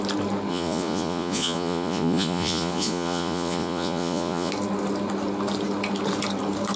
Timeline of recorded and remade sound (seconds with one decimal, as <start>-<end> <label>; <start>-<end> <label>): 0.0-0.5 recorded; 0.5-4.5 remade; 4.5-6.8 recorded